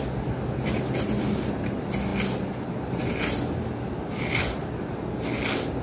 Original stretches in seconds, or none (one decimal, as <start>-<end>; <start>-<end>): 0.0-5.8